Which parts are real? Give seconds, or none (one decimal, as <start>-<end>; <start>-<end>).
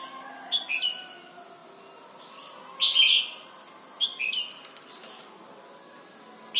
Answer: 0.0-6.6